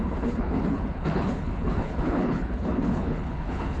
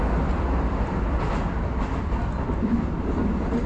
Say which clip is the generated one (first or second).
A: first